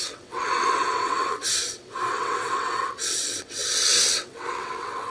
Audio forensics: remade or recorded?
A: remade